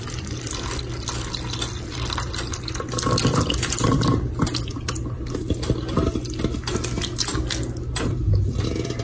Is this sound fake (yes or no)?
no